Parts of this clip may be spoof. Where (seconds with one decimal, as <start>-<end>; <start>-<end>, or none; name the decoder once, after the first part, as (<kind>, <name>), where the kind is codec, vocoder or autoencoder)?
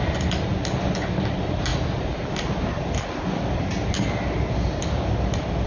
none